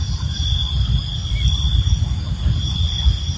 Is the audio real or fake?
real